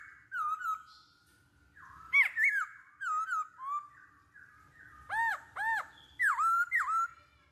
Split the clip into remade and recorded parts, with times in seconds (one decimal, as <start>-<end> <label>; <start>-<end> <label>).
0.0-7.5 recorded